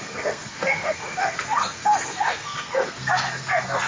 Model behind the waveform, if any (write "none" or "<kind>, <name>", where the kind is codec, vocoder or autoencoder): codec, SNAC